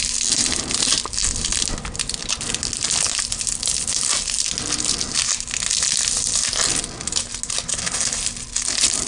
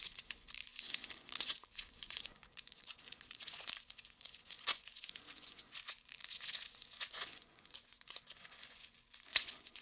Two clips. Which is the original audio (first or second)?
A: first